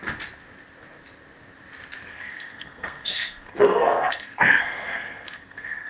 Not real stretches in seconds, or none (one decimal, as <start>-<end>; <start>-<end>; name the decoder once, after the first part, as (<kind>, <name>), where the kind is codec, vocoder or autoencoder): 2.1-5.9 (codec, SNAC)